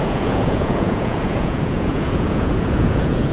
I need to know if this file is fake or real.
fake